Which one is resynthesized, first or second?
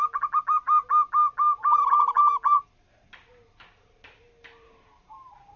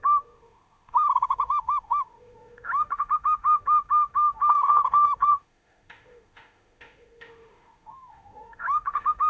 second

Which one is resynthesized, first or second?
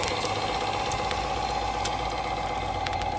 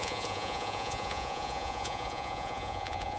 second